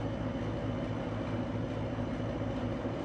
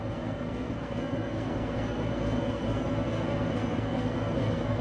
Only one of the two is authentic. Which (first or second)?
first